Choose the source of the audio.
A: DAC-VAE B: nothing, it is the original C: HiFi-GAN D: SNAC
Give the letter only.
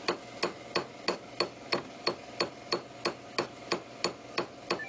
B